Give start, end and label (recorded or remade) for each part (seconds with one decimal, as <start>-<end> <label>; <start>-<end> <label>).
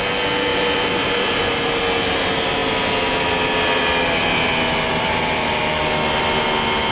0.0-0.5 recorded; 0.5-1.5 remade; 1.5-4.9 recorded; 4.9-5.6 remade; 5.6-6.9 recorded